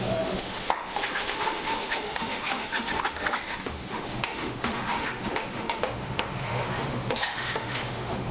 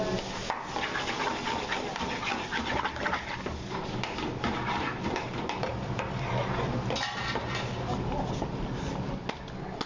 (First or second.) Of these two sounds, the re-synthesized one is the first